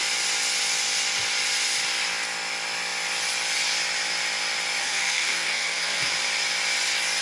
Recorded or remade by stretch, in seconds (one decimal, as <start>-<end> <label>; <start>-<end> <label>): 0.0-4.8 recorded; 4.8-6.1 remade; 6.1-7.2 recorded